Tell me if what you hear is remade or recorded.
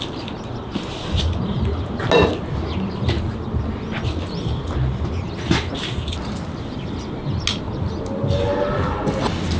recorded